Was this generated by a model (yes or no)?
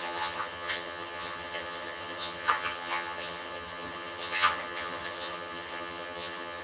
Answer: yes